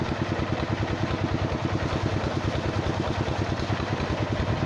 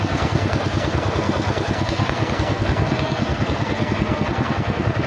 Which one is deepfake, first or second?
second